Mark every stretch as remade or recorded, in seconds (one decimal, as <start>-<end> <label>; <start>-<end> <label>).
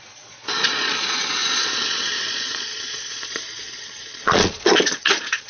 0.0-5.5 remade